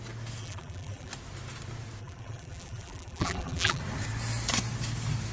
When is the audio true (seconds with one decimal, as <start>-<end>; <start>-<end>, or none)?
0.0-0.4; 1.1-2.0; 3.8-5.3